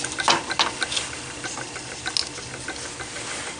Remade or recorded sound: recorded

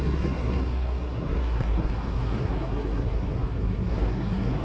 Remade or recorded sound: remade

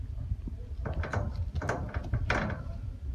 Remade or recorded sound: recorded